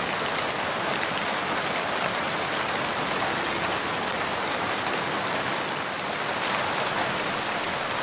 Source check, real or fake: real